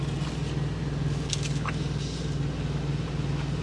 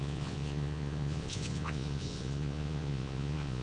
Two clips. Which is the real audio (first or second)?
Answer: first